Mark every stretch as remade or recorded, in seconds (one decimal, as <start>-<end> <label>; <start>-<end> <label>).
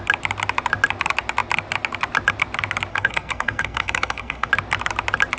0.0-2.9 recorded; 2.9-4.5 remade; 4.5-5.4 recorded